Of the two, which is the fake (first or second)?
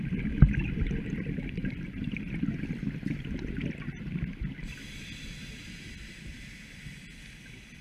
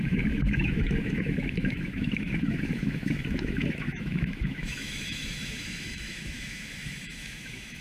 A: second